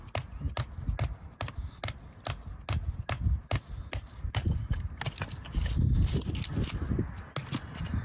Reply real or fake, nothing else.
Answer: real